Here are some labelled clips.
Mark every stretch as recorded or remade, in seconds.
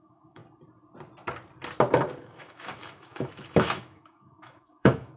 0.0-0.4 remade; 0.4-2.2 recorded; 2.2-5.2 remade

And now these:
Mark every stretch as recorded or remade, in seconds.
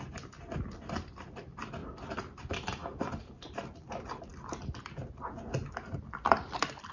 0.0-6.9 recorded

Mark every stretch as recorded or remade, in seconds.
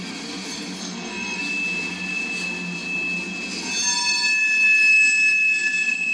0.0-0.8 recorded; 0.8-1.4 remade; 1.4-6.1 recorded